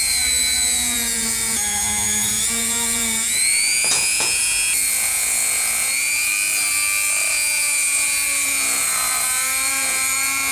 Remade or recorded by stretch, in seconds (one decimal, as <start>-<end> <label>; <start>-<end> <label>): 0.0-6.3 remade; 6.3-7.3 recorded; 7.3-10.5 remade